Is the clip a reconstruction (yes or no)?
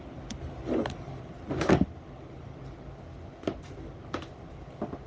no